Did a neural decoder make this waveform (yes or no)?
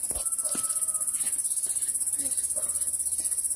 no